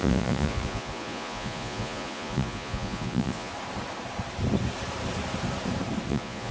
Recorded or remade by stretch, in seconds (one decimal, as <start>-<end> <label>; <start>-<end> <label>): 0.0-3.5 remade; 3.5-6.1 recorded; 6.1-6.5 remade